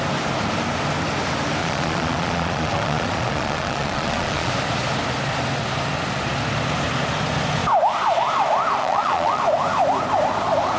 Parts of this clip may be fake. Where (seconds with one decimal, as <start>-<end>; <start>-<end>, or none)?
1.6-4.5; 8.8-9.4